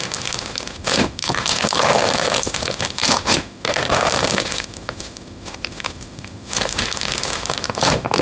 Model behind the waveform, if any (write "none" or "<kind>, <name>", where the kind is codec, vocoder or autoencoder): autoencoder, DAC-VAE